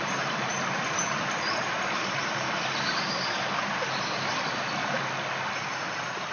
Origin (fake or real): real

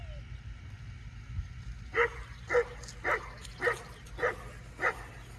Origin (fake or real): real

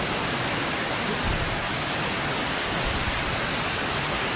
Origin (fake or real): real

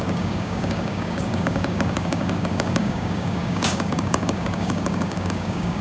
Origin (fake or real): fake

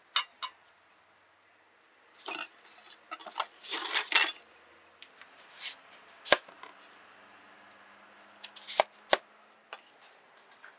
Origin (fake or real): real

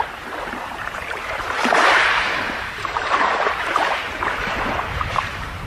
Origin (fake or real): fake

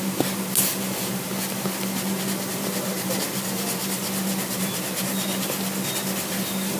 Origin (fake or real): real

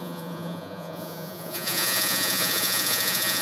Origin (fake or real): fake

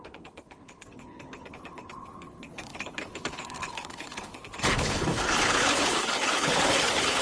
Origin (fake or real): fake